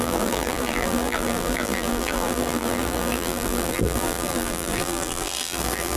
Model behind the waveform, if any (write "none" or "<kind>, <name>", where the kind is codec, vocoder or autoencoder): vocoder, BigVGAN v2